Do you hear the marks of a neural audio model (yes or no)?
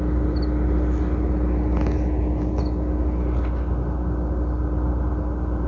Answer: no